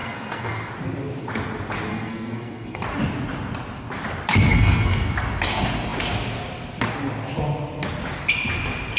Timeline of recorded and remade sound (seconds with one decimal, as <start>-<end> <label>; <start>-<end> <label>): 0.0-0.7 remade; 0.7-1.9 recorded; 1.9-2.8 remade; 2.8-4.5 recorded; 4.5-5.1 remade; 5.1-9.0 recorded